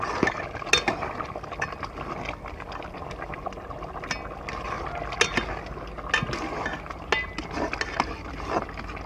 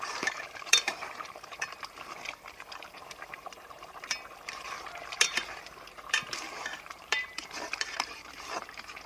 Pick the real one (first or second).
first